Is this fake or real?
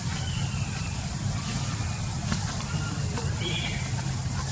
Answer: real